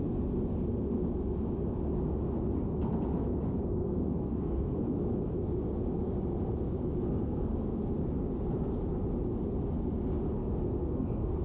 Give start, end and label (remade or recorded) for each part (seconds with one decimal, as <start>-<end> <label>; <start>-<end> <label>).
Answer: 0.0-3.8 recorded; 3.8-4.8 remade; 4.8-7.1 recorded; 7.1-7.8 remade; 7.8-10.4 recorded; 10.4-11.4 remade